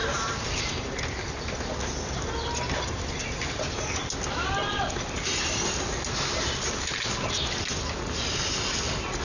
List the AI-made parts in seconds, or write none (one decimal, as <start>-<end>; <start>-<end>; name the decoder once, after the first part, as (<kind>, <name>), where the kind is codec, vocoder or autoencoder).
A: 0.0-0.7 (vocoder, BigVGAN v2)